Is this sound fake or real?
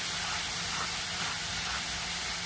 real